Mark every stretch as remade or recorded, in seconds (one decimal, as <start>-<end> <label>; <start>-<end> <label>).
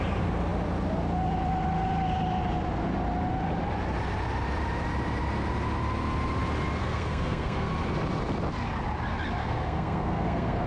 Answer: 0.0-6.8 recorded; 6.8-7.7 remade; 7.7-9.4 recorded; 9.4-10.7 remade